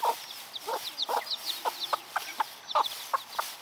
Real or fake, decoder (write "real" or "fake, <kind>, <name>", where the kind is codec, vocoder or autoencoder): fake, vocoder, BigVGAN v2